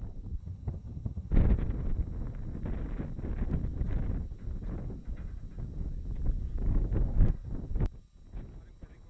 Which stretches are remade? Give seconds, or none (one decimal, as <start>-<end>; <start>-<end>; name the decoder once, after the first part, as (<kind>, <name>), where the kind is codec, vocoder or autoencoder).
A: 0.4-1.3 (vocoder, HiFi-GAN)